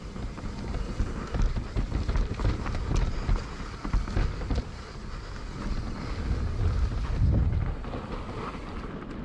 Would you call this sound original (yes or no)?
yes